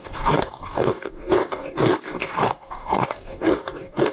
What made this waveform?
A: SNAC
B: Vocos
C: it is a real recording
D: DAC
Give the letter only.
D